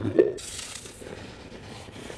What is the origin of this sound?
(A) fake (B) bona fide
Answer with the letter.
A